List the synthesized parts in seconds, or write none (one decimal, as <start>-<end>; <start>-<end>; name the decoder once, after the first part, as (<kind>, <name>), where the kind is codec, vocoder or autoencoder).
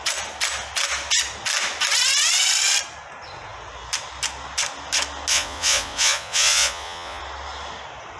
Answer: 5.3-7.2 (vocoder, Vocos)